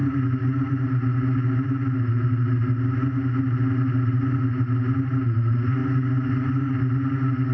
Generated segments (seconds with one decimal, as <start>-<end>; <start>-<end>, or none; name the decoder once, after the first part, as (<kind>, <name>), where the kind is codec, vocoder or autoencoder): none